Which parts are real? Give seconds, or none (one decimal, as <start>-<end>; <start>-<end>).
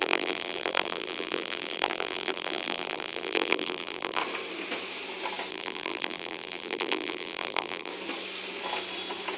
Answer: 4.2-5.5; 7.9-9.4